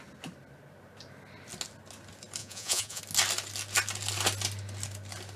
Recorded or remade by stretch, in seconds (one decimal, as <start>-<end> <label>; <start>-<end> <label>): 0.0-2.4 recorded; 2.4-3.0 remade; 3.0-5.4 recorded